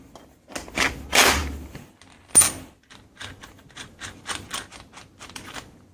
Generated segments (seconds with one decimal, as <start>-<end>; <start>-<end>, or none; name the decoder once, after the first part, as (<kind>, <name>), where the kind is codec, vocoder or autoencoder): none